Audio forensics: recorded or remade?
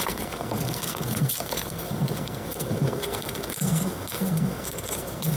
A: remade